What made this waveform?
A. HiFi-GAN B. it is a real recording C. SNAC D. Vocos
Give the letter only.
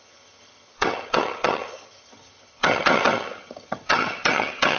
A